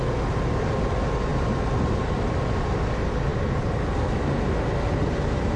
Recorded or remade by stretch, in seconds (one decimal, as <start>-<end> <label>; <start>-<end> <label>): 0.0-5.6 recorded